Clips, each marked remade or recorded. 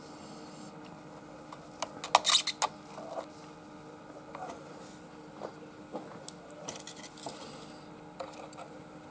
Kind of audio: recorded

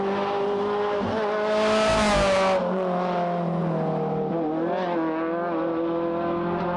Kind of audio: recorded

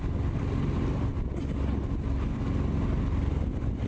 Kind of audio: recorded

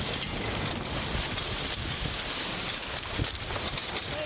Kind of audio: recorded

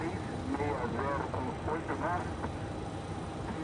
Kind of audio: recorded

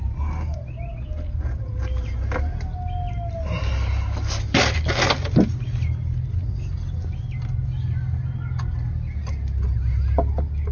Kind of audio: recorded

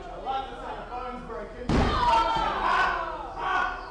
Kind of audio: recorded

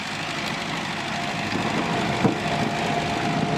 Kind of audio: recorded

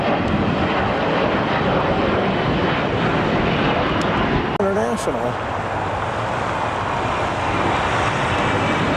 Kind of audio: recorded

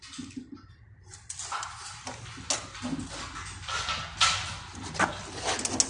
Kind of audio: recorded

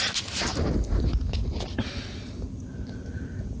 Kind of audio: recorded